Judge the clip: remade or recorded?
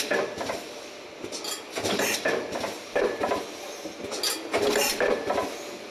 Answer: recorded